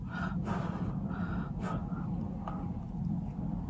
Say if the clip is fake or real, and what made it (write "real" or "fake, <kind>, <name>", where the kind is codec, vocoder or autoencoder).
real